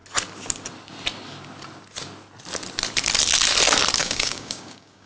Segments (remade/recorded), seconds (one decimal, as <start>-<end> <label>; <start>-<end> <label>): 0.0-4.0 recorded; 4.0-5.1 remade